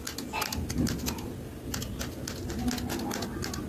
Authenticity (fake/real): real